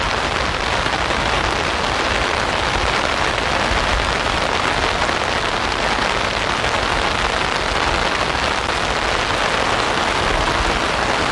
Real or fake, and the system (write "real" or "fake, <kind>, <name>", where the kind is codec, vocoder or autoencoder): real